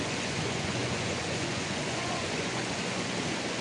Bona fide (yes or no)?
no